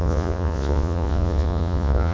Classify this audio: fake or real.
fake